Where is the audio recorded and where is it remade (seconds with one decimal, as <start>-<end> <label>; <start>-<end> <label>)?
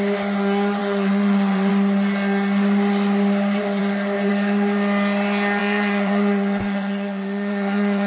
0.0-0.8 recorded; 0.8-1.7 remade; 1.7-5.6 recorded; 5.6-8.1 remade